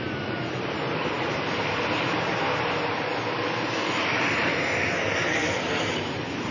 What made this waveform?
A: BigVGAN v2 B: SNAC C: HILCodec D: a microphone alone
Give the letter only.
A